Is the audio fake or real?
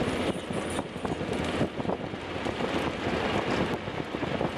real